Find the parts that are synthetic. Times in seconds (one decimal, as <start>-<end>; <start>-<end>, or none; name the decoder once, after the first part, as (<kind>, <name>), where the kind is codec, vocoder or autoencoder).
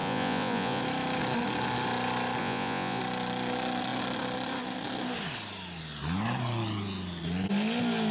0.0-0.8 (vocoder, Vocos); 2.4-3.0